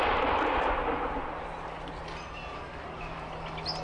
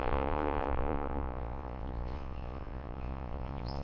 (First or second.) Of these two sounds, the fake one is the second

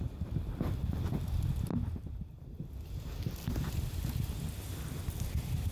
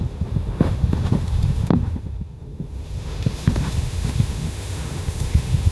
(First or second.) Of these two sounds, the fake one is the second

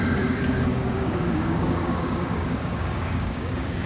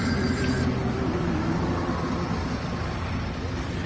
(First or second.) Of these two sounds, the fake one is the first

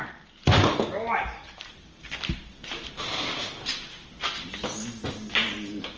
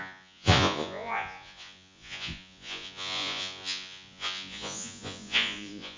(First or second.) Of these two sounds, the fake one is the second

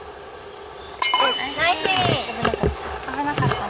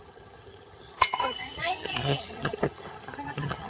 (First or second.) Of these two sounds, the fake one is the second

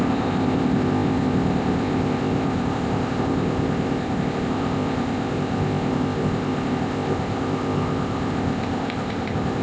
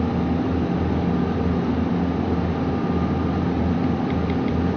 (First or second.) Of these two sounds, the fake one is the first